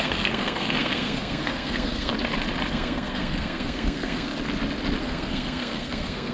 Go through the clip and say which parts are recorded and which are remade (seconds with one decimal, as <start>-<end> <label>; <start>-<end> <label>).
0.0-2.1 remade; 2.1-2.7 recorded; 2.7-4.3 remade; 4.3-5.0 recorded; 5.0-6.3 remade